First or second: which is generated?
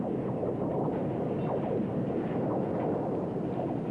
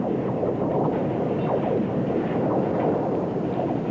second